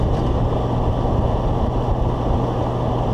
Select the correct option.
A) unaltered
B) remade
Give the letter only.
A